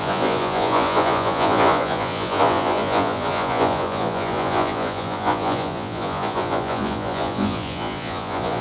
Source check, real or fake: fake